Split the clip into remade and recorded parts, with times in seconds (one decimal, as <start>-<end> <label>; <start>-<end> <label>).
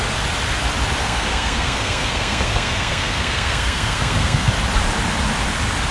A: 0.0-1.0 recorded; 1.0-4.5 remade; 4.5-5.9 recorded